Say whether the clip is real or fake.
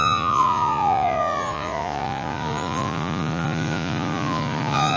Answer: fake